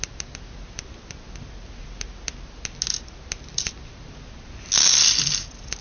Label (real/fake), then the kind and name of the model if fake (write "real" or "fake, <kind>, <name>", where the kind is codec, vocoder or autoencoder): real